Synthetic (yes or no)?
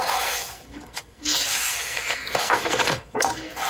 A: yes